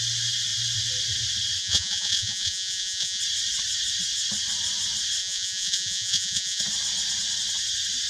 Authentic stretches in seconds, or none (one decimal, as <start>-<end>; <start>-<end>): 0.0-1.6; 3.2-5.2; 6.6-8.1